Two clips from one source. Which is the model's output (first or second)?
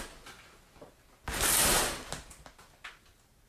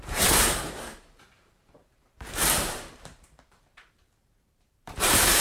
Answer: second